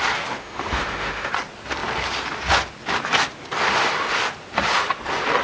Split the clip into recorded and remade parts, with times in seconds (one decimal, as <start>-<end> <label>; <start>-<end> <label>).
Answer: 0.0-0.4 recorded; 0.4-1.3 remade; 1.3-5.4 recorded